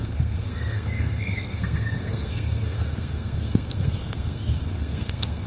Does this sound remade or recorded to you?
remade